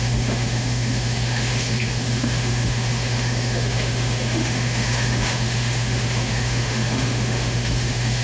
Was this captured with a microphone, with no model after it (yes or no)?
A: no